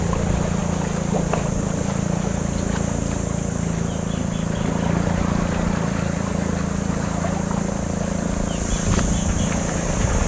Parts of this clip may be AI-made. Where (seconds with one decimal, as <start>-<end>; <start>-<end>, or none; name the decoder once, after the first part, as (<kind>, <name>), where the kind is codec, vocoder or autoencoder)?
none

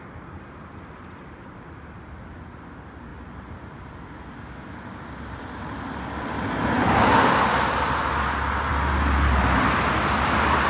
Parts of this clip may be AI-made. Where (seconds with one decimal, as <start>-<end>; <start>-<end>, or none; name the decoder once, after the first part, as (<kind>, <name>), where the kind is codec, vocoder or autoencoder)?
none

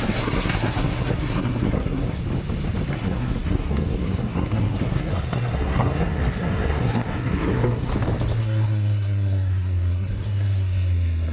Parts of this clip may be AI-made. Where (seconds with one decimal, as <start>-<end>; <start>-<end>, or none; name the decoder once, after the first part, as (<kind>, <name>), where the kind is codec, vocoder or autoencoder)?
0.0-2.2 (codec, SNAC); 2.9-7.9; 8.4-11.3